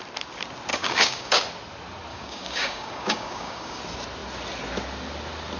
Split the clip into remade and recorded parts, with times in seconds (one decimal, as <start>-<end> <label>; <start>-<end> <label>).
0.0-0.7 recorded; 0.7-1.4 remade; 1.4-2.1 recorded; 2.1-3.8 remade; 3.8-5.6 recorded